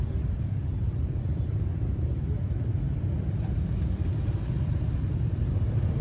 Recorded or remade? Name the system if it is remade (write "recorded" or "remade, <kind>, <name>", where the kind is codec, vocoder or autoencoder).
remade, vocoder, BigVGAN v2